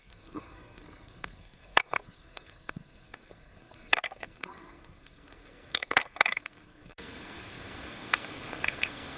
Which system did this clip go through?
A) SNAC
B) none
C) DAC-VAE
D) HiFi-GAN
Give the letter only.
A